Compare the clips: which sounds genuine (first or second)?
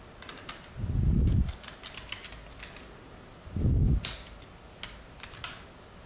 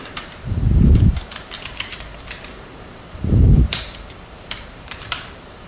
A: first